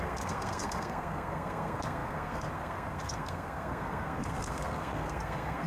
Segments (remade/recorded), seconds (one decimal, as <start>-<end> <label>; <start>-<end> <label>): 0.0-5.7 remade